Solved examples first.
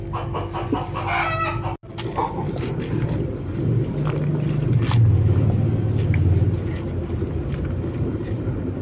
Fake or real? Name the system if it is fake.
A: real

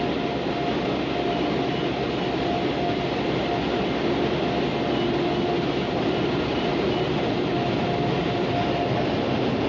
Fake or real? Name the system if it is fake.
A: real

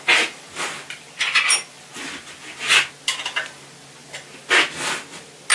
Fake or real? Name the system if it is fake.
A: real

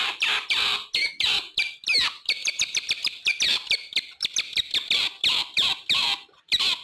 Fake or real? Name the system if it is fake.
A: fake, vocoder, BigVGAN v2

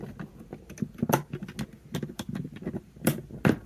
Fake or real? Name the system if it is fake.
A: real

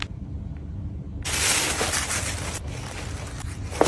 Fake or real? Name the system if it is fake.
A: real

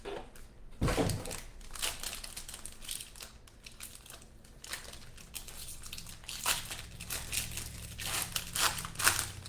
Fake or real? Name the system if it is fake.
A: real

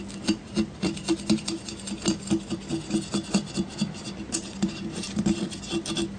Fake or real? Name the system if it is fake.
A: real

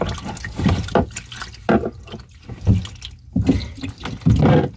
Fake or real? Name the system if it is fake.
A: real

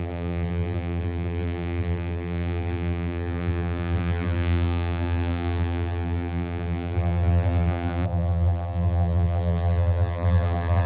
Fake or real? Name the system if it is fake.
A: fake, vocoder, BigVGAN v2